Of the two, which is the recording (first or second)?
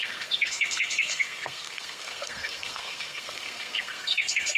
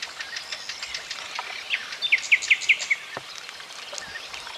second